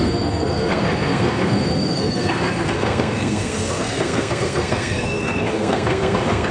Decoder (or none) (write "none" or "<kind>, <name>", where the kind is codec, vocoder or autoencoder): codec, SNAC